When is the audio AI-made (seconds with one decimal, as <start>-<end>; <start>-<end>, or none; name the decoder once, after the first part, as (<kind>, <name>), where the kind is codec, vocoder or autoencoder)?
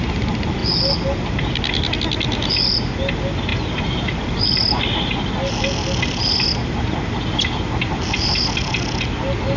0.6-1.2 (vocoder, BigVGAN v2); 3.5-4.8